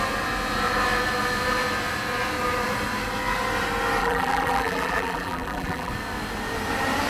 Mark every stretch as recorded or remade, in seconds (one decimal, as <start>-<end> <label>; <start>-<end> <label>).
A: 0.0-4.0 recorded; 4.0-5.9 remade; 5.9-7.1 recorded